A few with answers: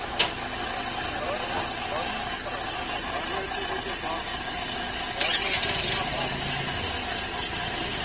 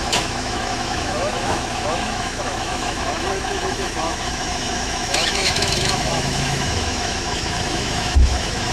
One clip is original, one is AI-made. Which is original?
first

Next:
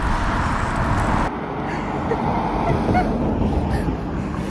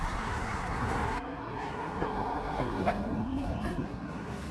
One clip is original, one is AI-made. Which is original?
first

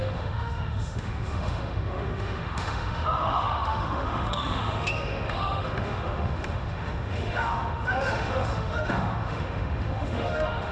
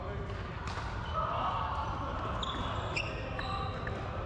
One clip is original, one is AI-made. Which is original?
second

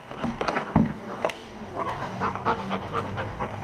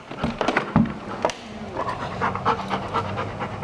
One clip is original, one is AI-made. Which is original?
second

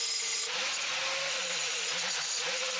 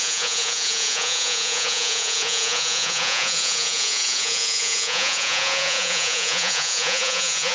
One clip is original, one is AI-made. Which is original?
first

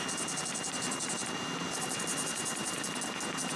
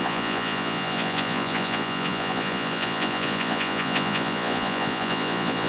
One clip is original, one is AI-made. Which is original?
first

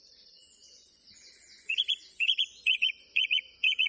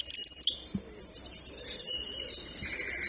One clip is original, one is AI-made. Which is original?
second